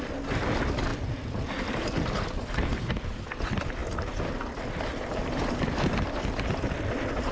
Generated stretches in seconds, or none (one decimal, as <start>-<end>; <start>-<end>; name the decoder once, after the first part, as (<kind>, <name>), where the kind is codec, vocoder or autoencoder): none